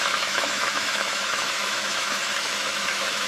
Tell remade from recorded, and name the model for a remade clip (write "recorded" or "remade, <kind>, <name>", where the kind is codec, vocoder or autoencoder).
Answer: remade, autoencoder, DAC-VAE